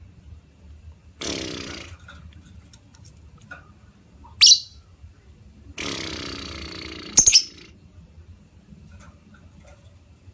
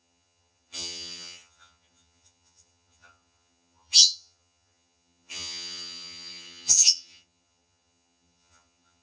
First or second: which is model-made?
second